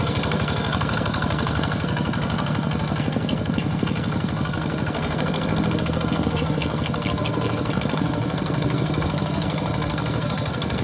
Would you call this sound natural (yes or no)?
no